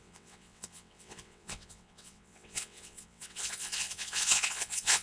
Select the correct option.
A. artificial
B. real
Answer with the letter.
A